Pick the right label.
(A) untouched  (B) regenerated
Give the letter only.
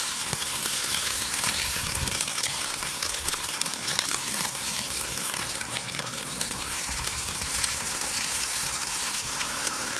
B